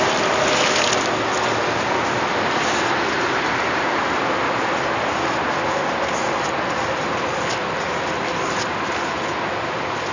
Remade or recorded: recorded